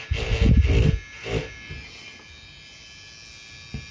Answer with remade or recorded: recorded